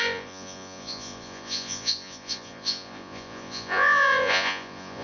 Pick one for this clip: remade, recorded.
remade